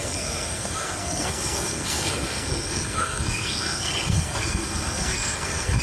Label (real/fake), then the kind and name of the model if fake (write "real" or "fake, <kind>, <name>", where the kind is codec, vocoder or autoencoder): fake, codec, SNAC